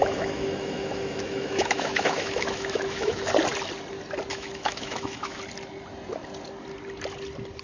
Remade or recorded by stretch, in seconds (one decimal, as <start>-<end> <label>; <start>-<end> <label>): 0.0-3.3 remade; 3.3-4.3 recorded; 4.3-5.4 remade; 5.4-7.6 recorded